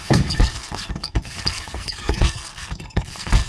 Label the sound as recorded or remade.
remade